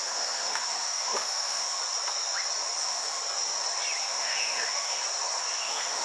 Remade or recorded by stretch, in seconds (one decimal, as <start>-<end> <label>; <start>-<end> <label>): 0.0-1.8 remade; 1.8-2.8 recorded; 2.8-3.2 remade; 3.2-4.0 recorded; 4.0-5.0 remade; 5.0-5.6 recorded; 5.6-6.0 remade